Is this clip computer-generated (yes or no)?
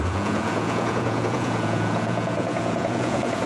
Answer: yes